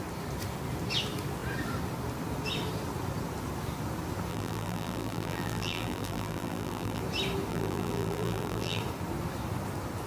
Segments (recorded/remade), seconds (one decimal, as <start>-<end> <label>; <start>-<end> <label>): 0.0-4.3 recorded; 4.3-7.0 remade; 7.0-7.5 recorded; 7.5-8.8 remade; 8.8-10.1 recorded